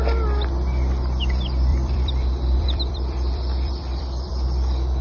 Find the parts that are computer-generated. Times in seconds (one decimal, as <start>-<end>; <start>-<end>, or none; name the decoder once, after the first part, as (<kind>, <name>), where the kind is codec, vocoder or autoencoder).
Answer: 1.7-5.0 (vocoder, BigVGAN v2)